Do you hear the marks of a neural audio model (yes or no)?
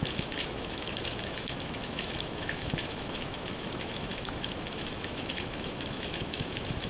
yes